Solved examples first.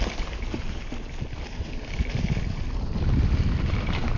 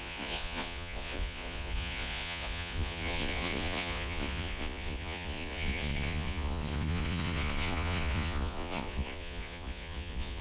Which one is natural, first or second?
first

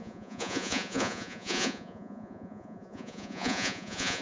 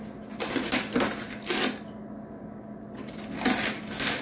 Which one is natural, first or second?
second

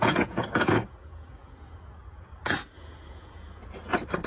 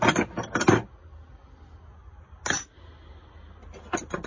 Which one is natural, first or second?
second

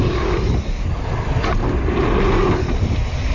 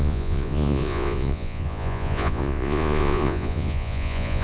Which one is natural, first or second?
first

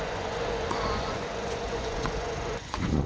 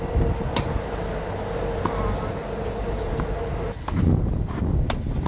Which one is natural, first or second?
second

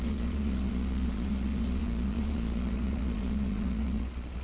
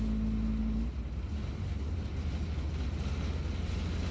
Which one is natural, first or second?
second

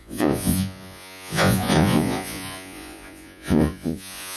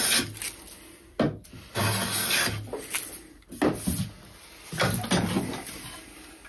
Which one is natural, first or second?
second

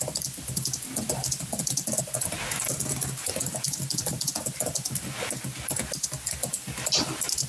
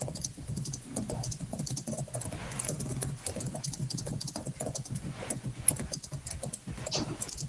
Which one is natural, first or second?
first